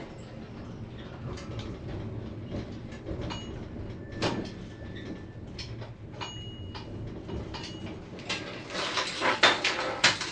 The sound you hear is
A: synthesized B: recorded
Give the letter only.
B